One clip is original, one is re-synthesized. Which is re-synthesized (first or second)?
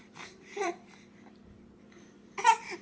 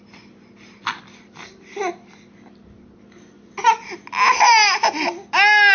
first